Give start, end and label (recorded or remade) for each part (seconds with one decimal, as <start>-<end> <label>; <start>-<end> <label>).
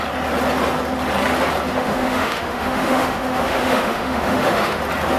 0.0-1.7 recorded; 1.7-4.8 remade; 4.8-5.2 recorded